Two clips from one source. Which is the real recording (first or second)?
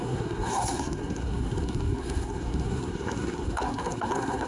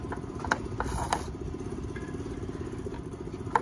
second